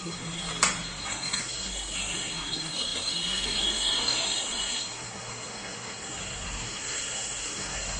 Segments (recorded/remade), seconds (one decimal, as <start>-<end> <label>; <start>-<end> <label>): 0.0-0.5 remade; 0.5-1.0 recorded; 1.0-8.0 remade